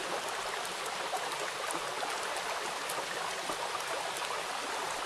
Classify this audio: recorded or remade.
recorded